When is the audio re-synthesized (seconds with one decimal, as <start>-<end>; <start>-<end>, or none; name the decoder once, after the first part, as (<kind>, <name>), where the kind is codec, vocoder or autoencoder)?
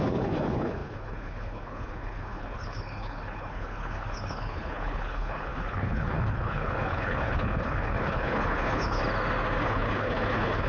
0.0-9.0 (codec, HILCodec); 9.6-10.7